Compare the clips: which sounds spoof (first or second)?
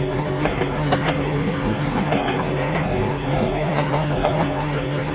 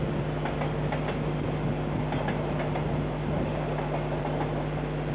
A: first